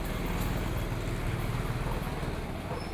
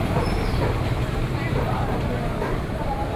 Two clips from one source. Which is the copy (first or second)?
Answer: second